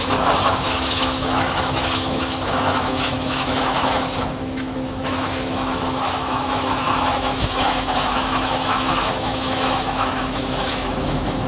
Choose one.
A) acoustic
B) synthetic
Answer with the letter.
B